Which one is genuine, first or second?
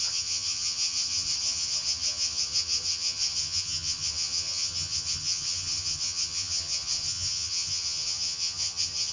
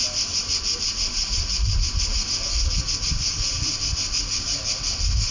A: second